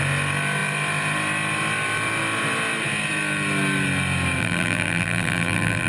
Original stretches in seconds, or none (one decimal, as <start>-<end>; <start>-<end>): 0.0-4.4